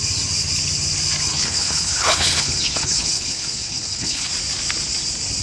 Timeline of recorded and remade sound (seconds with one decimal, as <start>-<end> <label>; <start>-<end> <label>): 0.0-1.3 recorded; 1.3-4.3 remade; 4.3-5.4 recorded